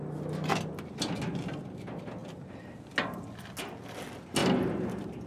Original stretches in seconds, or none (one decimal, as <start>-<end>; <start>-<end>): 0.0-5.3